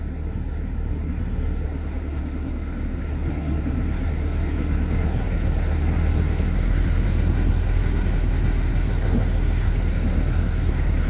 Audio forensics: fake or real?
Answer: fake